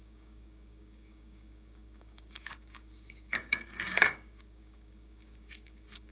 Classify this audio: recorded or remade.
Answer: remade